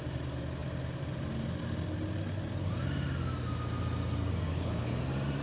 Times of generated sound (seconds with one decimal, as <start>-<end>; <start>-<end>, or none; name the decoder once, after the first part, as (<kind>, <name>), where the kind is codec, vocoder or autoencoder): 4.5-5.0 (codec, HILCodec)